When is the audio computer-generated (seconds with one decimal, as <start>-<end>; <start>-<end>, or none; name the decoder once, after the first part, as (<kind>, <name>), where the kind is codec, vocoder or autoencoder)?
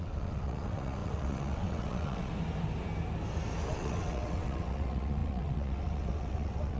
0.0-2.3 (vocoder, WaveNeXt); 3.7-6.8